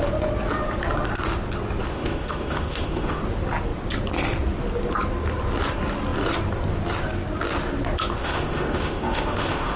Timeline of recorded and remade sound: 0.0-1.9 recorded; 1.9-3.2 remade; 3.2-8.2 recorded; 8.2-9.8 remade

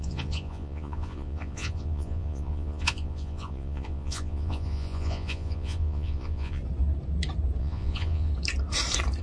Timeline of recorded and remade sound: 0.0-6.6 remade; 6.6-7.6 recorded; 7.6-8.3 remade; 8.3-9.2 recorded

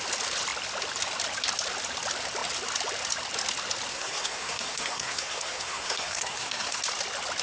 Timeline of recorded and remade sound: 0.0-3.9 recorded; 3.9-6.8 remade; 6.8-7.4 recorded

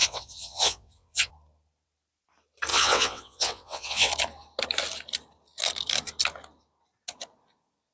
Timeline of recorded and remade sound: 0.0-1.3 remade; 1.3-2.7 recorded; 2.7-4.1 remade; 4.1-7.9 recorded

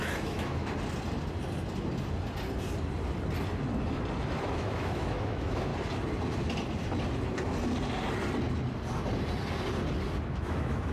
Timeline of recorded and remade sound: 0.0-0.6 remade; 0.6-4.4 recorded; 4.4-5.7 remade; 5.7-10.3 recorded; 10.3-10.9 remade